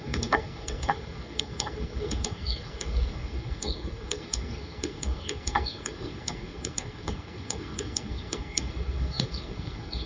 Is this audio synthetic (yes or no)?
yes